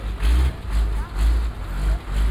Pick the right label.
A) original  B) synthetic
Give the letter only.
A